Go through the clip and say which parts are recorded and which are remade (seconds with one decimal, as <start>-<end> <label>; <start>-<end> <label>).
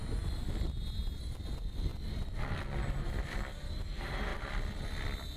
0.0-5.4 recorded